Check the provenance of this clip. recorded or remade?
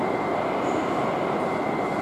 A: recorded